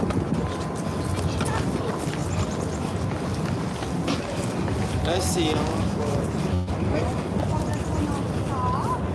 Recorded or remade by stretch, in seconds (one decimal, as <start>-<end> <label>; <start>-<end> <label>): 0.0-9.1 recorded